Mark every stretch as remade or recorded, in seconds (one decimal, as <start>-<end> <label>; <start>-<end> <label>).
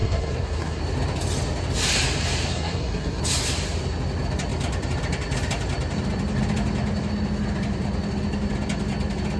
0.0-0.8 remade; 0.8-2.5 recorded; 2.5-3.2 remade; 3.2-9.4 recorded